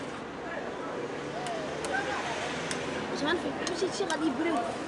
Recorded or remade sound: recorded